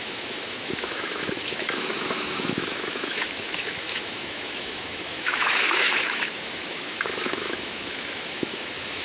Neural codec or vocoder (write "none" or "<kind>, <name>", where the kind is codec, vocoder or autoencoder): autoencoder, DAC-VAE